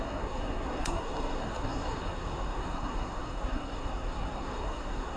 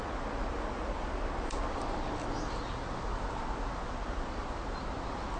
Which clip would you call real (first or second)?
second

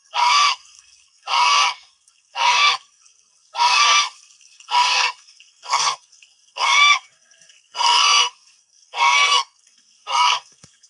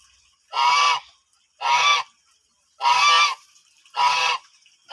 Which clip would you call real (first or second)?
second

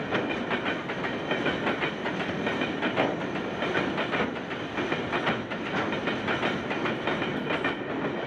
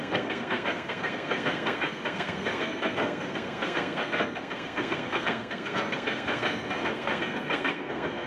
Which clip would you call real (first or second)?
first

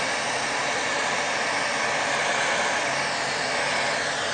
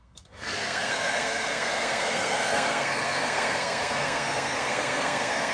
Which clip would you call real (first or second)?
first